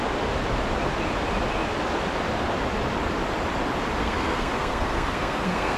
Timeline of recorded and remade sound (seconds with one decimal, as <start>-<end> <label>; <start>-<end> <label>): 0.0-4.0 recorded; 4.0-5.8 remade